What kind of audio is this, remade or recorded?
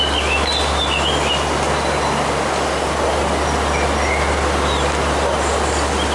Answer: recorded